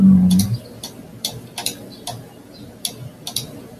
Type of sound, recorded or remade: recorded